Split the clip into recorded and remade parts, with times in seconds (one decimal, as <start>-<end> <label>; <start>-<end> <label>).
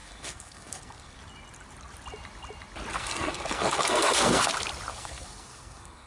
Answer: 0.0-1.2 remade; 1.2-2.9 recorded; 2.9-4.5 remade; 4.5-4.9 recorded; 4.9-6.1 remade